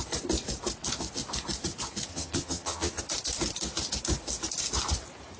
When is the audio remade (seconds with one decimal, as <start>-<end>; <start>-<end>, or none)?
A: 2.1-3.0